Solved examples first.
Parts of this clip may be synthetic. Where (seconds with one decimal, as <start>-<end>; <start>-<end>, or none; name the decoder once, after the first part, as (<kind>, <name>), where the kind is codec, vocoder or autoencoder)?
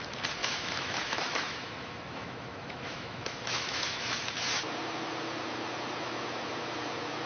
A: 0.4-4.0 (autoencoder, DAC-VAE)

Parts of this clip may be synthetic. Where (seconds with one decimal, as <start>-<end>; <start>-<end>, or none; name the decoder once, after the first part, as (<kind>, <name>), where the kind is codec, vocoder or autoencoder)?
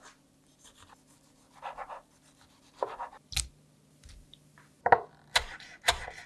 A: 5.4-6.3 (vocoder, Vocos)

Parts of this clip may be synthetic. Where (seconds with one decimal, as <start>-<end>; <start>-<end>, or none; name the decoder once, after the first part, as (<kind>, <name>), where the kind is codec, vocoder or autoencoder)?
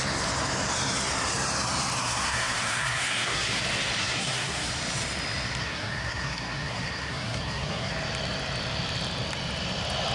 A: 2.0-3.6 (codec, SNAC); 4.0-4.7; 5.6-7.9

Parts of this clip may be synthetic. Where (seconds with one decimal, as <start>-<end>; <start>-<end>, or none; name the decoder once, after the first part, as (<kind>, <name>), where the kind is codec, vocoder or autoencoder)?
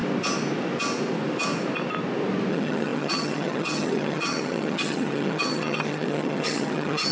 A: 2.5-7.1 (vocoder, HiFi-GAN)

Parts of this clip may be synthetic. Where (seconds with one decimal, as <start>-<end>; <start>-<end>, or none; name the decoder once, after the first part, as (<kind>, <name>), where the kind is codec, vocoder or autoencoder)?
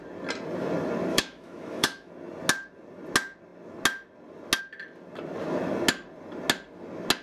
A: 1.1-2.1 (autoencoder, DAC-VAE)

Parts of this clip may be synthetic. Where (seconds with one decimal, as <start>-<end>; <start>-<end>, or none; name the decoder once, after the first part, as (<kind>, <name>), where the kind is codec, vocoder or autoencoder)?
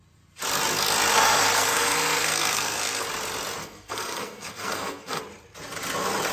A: 1.1-3.0 (codec, SNAC); 3.6-5.2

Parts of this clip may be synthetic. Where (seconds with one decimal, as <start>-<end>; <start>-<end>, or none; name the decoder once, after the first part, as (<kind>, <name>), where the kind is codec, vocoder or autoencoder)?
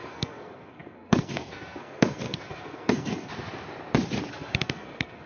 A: 0.0-3.3 (codec, SNAC); 4.3-5.3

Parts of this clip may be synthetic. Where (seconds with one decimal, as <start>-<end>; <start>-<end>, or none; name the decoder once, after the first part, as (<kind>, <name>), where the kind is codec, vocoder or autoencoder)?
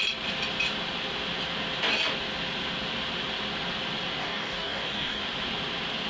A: 4.2-5.2 (codec, DAC)